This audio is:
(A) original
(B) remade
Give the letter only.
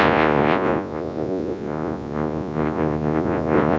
B